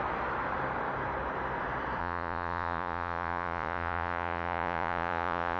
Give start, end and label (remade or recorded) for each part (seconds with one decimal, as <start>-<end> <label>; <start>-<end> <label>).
0.0-2.0 recorded; 2.0-5.6 remade